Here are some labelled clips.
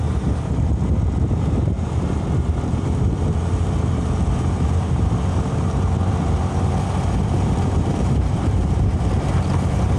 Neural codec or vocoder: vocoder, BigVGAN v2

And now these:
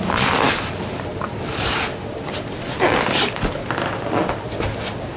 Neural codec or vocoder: none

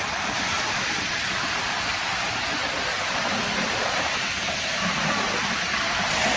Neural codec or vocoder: vocoder, BigVGAN v2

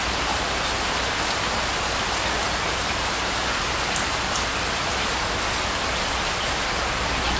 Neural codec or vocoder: none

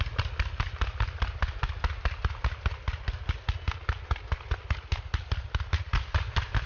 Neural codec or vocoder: none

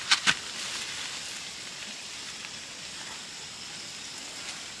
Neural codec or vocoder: none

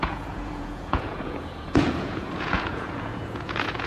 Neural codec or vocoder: vocoder, Vocos